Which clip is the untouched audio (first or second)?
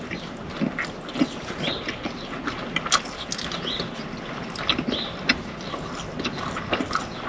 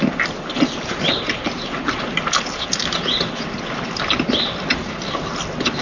first